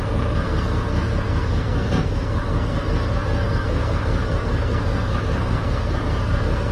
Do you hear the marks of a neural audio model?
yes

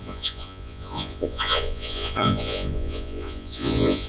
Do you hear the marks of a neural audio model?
yes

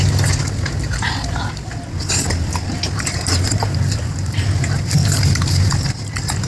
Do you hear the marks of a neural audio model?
no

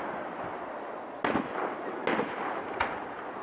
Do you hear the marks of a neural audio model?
no